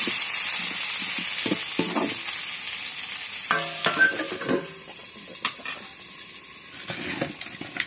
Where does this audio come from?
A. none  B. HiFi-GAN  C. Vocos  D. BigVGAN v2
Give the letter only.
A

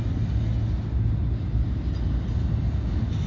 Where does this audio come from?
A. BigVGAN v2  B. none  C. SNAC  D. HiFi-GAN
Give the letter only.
B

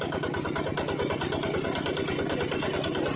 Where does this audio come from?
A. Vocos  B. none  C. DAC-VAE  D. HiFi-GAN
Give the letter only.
B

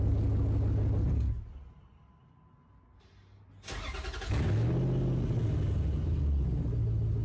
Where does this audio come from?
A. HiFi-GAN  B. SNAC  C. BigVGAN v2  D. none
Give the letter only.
D